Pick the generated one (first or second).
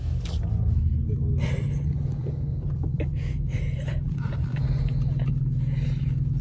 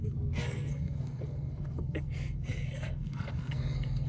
second